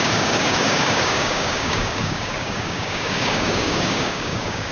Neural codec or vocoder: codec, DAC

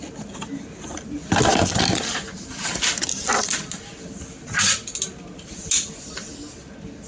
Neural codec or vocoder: none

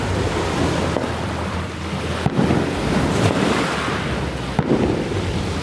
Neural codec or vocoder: none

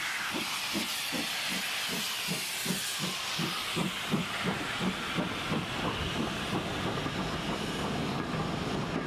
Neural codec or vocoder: none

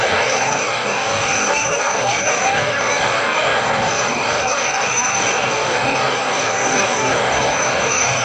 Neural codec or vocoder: codec, DAC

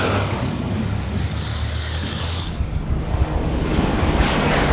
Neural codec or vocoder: codec, DAC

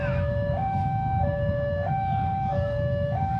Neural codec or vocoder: codec, DAC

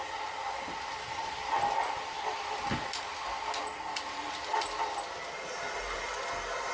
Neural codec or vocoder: none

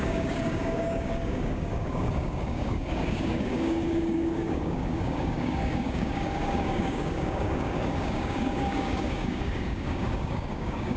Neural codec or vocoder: codec, DAC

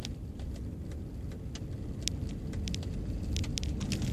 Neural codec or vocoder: none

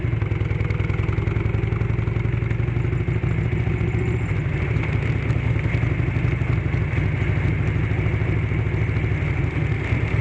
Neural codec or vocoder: none